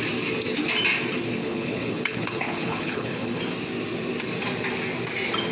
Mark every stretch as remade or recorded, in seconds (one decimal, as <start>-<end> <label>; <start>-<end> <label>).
0.0-1.4 recorded; 1.4-3.4 remade; 3.4-5.5 recorded